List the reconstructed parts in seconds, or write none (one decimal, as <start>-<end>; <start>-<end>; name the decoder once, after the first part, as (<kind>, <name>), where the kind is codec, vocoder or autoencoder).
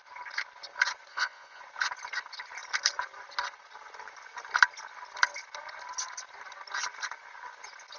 1.1-1.6 (vocoder, Vocos)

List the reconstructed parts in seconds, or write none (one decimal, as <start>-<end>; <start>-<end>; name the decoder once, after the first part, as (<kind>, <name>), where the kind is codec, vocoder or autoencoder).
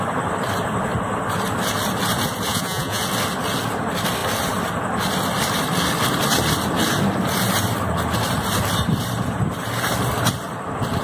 2.5-3.0 (vocoder, Vocos)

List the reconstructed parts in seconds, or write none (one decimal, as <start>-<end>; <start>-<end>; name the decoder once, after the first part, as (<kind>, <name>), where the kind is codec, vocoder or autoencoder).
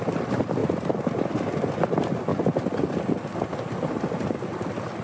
none